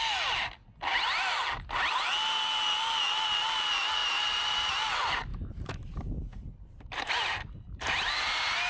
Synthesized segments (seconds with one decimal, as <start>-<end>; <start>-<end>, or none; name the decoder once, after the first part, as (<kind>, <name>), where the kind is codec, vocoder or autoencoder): 4.0-4.7 (vocoder, BigVGAN v2); 5.3-8.7